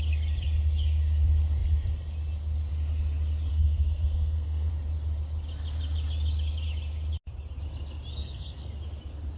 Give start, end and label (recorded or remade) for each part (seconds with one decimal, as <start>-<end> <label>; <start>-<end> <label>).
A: 0.0-3.5 recorded; 3.5-4.7 remade; 4.7-8.1 recorded; 8.1-8.7 remade; 8.7-9.4 recorded